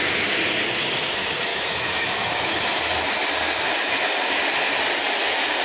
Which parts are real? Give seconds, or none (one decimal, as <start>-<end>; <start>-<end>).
0.0-1.5; 2.8-5.6